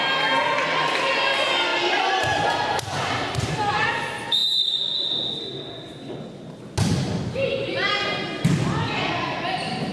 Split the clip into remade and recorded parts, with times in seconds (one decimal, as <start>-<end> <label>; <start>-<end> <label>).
0.0-9.9 recorded